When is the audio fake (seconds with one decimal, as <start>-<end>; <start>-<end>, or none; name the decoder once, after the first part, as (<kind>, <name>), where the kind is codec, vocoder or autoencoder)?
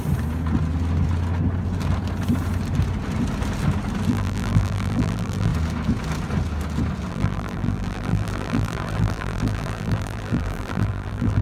4.1-5.5 (vocoder, BigVGAN v2); 7.1-11.4